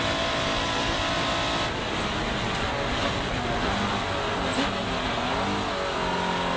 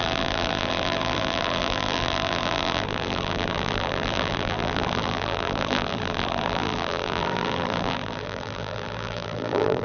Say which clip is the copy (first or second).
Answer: second